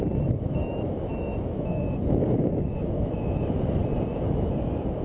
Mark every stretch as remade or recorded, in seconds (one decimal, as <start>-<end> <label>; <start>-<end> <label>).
0.0-0.6 recorded; 0.6-3.6 remade; 3.6-4.1 recorded; 4.1-5.0 remade